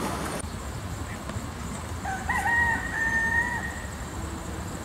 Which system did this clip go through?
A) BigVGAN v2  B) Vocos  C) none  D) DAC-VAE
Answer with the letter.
C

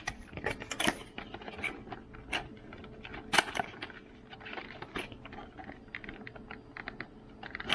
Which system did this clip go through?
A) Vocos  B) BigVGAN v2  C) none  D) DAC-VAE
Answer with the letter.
C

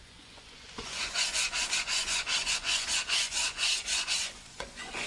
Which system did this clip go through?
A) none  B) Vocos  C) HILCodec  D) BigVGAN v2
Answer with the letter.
B